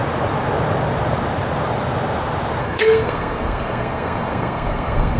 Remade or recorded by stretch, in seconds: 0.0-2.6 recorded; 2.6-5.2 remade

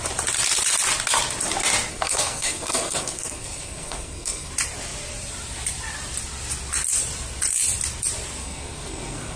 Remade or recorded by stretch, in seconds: 0.0-1.9 recorded; 1.9-4.5 remade; 4.5-8.4 recorded; 8.4-9.4 remade

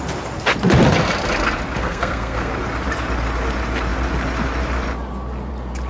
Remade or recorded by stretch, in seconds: 0.0-1.8 recorded; 1.8-2.5 remade; 2.5-5.9 recorded